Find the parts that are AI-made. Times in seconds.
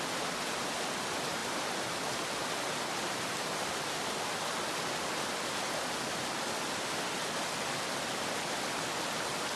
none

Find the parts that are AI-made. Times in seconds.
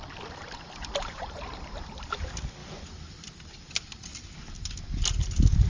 none